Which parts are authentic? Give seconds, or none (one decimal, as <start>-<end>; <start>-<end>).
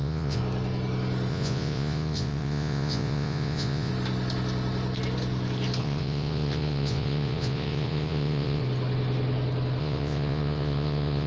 0.4-1.3; 3.9-5.8; 8.6-9.8